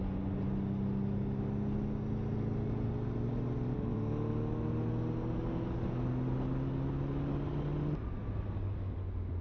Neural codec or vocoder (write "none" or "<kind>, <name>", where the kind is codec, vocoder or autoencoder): none